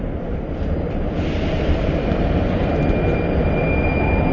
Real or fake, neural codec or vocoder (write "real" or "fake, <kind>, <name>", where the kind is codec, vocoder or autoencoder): fake, vocoder, BigVGAN v2